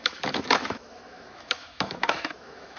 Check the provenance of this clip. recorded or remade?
remade